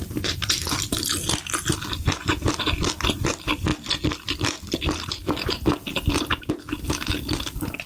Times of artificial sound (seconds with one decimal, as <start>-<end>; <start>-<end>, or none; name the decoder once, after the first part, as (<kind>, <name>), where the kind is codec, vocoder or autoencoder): none